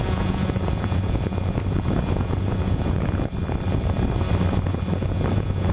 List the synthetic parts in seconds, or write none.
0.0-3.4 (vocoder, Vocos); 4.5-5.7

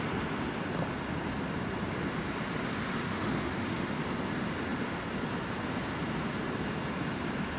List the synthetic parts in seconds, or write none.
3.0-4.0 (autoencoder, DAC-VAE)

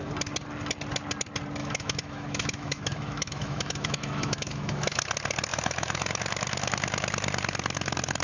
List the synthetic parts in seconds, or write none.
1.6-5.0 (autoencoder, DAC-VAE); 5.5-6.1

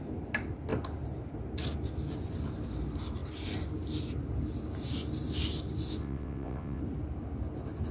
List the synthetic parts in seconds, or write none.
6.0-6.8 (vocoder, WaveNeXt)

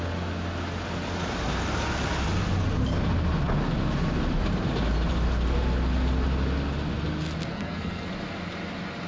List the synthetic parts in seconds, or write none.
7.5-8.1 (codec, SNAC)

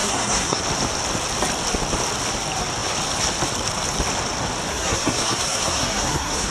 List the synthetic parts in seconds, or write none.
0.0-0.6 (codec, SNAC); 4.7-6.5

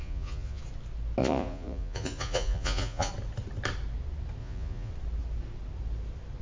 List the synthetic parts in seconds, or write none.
0.0-0.6 (vocoder, Vocos); 1.2-3.1; 4.4-4.9